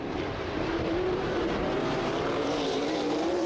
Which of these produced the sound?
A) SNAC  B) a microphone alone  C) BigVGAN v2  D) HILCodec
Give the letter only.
C